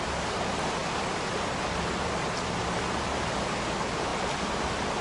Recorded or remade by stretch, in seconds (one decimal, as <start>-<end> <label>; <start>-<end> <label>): 0.0-5.0 recorded